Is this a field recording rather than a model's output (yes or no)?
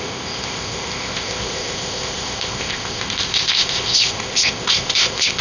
no